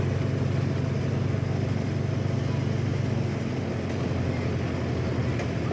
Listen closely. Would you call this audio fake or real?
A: real